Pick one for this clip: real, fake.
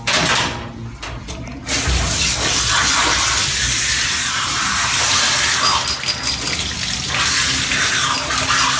real